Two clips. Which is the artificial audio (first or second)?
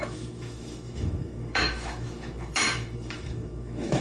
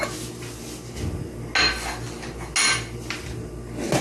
first